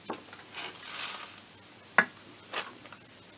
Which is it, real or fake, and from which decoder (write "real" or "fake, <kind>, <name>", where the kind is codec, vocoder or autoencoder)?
real